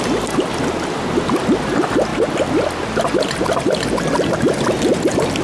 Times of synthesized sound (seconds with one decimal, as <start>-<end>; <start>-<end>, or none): none